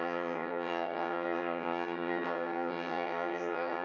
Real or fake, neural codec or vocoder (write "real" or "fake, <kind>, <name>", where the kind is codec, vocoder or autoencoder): fake, vocoder, HiFi-GAN